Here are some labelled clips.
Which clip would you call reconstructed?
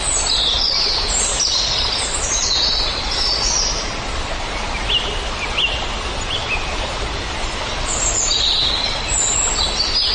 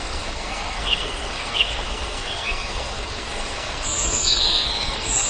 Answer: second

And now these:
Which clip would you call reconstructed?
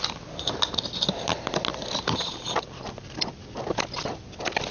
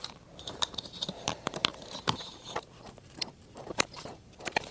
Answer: second